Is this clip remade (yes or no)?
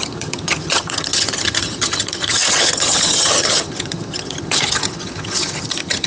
yes